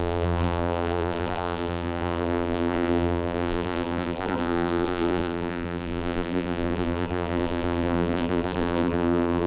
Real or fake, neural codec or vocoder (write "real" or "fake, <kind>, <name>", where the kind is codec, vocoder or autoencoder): fake, vocoder, BigVGAN v2